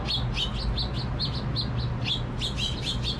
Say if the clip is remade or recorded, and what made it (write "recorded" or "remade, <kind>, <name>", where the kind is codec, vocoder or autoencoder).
recorded